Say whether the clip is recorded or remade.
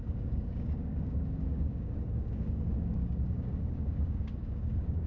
remade